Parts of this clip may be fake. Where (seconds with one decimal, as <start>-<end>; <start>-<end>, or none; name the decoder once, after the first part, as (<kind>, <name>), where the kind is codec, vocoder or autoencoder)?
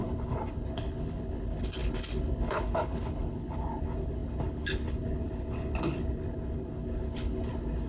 0.0-7.9 (codec, HILCodec)